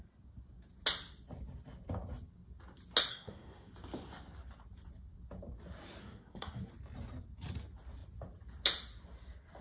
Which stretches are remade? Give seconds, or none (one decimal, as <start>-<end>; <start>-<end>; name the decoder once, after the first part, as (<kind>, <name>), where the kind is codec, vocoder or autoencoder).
3.1-3.7 (codec, SNAC); 6.0-6.7